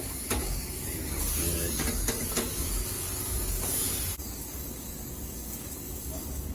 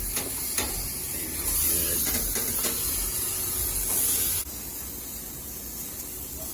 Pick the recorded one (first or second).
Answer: second